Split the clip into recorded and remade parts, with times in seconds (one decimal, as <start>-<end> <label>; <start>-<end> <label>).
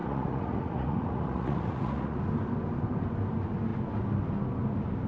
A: 0.0-2.2 remade; 2.2-5.1 recorded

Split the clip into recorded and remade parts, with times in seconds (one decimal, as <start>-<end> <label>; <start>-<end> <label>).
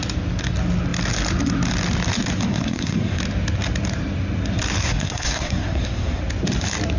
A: 0.0-2.5 recorded; 2.5-3.2 remade; 3.2-4.8 recorded; 4.8-6.2 remade; 6.2-7.0 recorded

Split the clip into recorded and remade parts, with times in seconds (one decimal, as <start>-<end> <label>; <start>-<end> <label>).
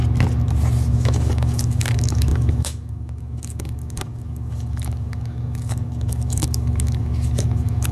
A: 0.0-0.9 recorded; 0.9-7.9 remade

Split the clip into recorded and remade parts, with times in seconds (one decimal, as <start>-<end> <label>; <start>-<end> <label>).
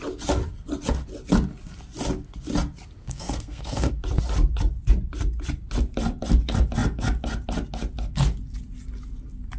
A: 0.0-3.0 recorded; 3.0-3.9 remade; 3.9-9.6 recorded